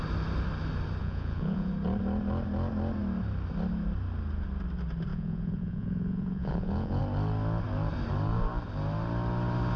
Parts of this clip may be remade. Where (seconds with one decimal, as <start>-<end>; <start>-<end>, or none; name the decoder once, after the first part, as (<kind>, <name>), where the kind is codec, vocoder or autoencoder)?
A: 1.0-1.7 (vocoder, Vocos); 5.1-7.0